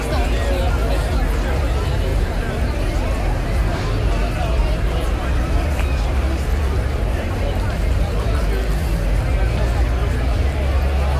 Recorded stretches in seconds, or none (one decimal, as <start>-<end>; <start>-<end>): 0.0-2.1; 3.8-4.6; 8.4-11.2